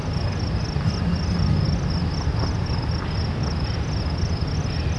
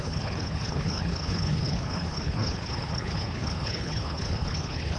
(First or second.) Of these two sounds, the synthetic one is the second